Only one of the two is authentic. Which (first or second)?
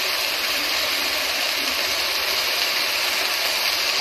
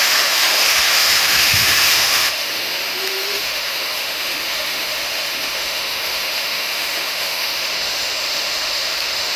first